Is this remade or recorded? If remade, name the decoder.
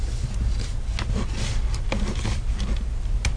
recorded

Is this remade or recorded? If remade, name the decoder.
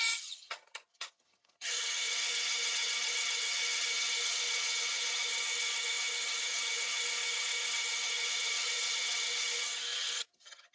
remade, vocoder, HiFi-GAN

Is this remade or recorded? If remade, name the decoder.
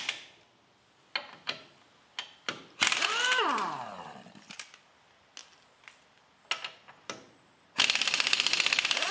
recorded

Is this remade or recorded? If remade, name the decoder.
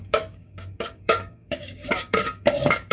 remade, codec, DAC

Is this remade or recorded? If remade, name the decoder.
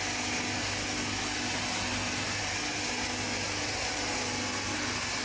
recorded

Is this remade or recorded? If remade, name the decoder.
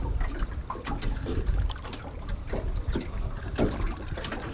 remade, vocoder, BigVGAN v2